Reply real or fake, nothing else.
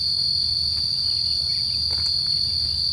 real